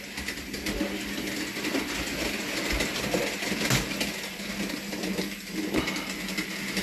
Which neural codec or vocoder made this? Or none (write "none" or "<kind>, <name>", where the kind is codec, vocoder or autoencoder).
none